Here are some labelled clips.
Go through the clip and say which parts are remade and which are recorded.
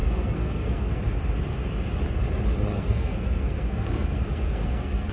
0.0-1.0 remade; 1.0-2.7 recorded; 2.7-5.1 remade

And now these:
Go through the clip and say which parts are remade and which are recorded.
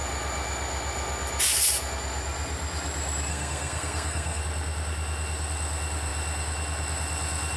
0.0-3.3 recorded; 3.3-4.4 remade; 4.4-7.6 recorded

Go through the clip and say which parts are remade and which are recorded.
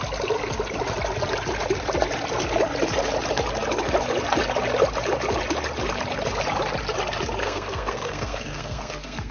0.0-7.4 recorded; 7.4-9.3 remade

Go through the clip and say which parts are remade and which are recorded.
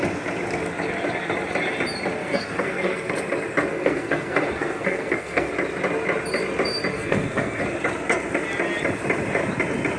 0.0-2.2 recorded; 2.2-3.1 remade; 3.1-3.7 recorded; 3.7-5.5 remade; 5.5-6.9 recorded; 6.9-7.6 remade; 7.6-10.0 recorded